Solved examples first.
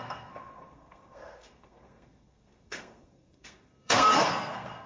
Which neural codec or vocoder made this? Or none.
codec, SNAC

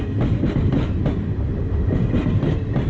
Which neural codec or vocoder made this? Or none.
none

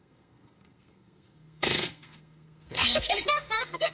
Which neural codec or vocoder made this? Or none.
codec, SNAC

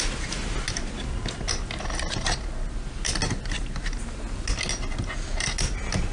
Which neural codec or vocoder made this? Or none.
none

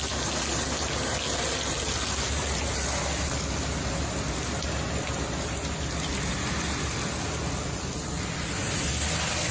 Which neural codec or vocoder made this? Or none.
none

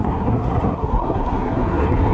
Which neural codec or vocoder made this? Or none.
codec, SNAC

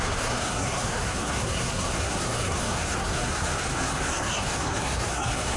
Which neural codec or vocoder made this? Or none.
codec, SNAC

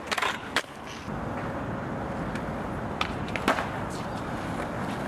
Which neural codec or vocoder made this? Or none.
none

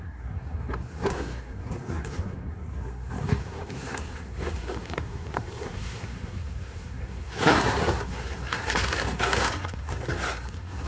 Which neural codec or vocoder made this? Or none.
codec, SNAC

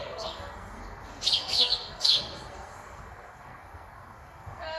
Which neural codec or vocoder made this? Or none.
codec, SNAC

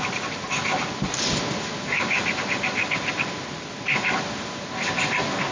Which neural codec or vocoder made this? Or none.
none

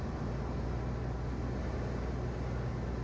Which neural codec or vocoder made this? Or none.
none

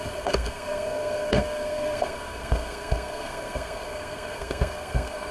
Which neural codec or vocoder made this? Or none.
codec, SNAC